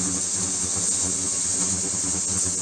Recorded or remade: recorded